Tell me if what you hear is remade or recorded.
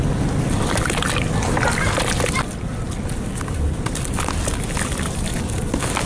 recorded